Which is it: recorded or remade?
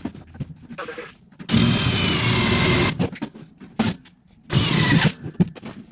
recorded